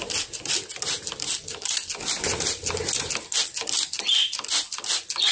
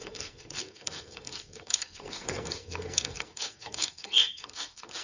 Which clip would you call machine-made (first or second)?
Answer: second